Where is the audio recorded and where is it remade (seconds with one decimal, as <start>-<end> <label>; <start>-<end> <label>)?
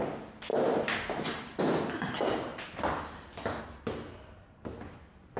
0.0-5.4 recorded